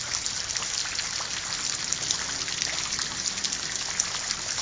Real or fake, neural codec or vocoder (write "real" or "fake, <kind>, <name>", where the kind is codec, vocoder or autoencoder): real